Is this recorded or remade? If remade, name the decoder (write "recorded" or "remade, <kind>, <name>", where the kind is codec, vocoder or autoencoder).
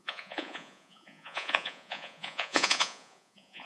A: remade, vocoder, Vocos